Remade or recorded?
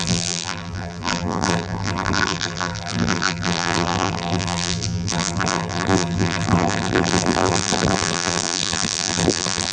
remade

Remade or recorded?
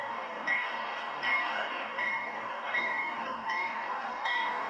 remade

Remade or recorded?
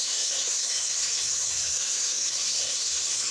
remade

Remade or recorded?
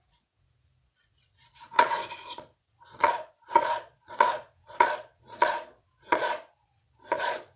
remade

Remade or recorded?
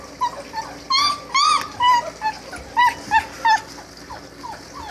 recorded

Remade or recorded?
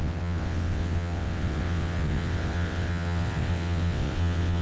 remade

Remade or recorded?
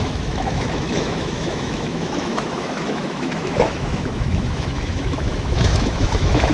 remade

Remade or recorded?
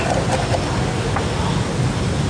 recorded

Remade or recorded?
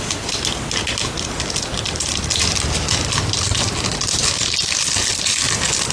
recorded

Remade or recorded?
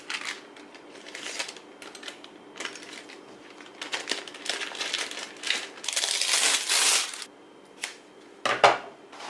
recorded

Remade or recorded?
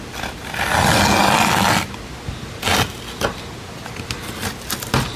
recorded